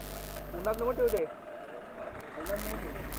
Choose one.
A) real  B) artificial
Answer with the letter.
A